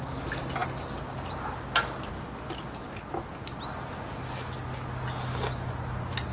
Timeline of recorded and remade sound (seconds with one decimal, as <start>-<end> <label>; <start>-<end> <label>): 0.0-6.3 recorded